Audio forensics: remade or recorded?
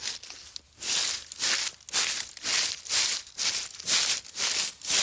recorded